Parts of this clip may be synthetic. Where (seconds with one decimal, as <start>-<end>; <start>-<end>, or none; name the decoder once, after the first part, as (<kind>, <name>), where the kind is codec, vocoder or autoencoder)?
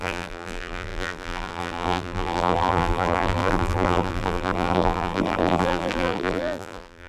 0.0-7.1 (vocoder, BigVGAN v2)